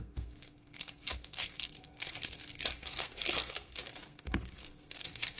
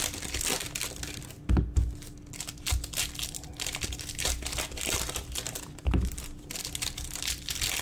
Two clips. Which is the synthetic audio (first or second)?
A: first